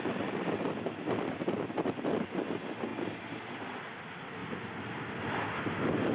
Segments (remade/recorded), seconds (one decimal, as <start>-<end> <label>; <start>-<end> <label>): 0.0-6.1 recorded

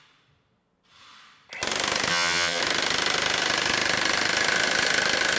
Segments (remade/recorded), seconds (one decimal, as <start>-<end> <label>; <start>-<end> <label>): 0.0-2.1 recorded; 2.1-2.6 remade; 2.6-5.4 recorded

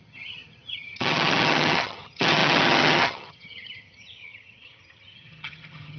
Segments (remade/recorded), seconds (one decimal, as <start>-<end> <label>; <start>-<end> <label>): 0.0-6.0 remade

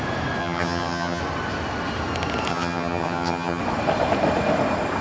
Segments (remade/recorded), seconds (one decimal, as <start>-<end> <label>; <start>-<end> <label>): 0.0-0.4 recorded; 0.4-1.2 remade; 1.2-2.5 recorded; 2.5-3.6 remade; 3.6-5.0 recorded